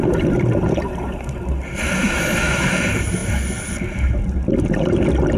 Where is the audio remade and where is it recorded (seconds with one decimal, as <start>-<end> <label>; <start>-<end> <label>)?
0.0-2.0 recorded; 2.0-2.7 remade; 2.7-5.4 recorded